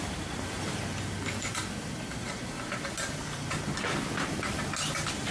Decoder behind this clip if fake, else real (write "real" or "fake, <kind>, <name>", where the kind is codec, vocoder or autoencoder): real